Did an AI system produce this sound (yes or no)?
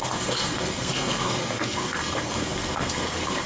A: yes